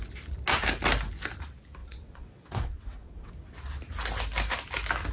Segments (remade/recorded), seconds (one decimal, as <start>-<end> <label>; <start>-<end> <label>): 0.0-1.8 recorded; 1.8-3.3 remade; 3.3-5.1 recorded